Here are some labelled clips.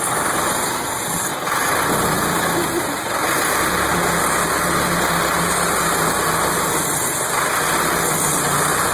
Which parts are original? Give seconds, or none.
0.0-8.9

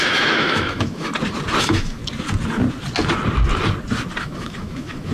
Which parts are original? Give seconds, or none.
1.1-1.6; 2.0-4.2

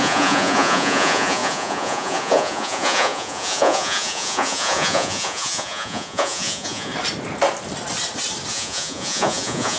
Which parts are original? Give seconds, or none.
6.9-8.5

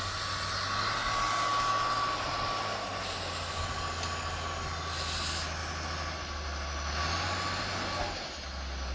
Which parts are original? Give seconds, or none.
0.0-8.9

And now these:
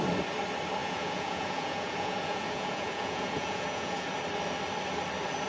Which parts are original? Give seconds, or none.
0.0-0.8; 4.1-5.5

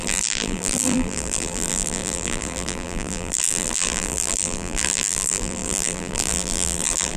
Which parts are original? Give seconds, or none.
none

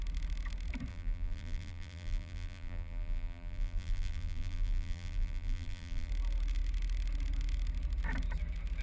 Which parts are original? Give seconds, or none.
0.0-0.9; 6.1-8.8